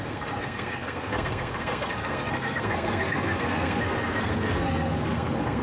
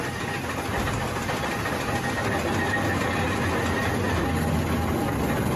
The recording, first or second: second